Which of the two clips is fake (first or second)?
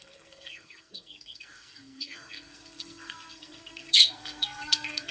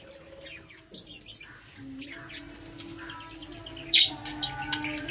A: first